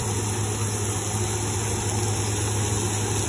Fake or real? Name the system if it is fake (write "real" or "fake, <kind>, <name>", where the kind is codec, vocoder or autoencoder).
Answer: real